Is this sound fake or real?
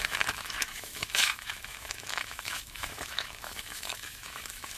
fake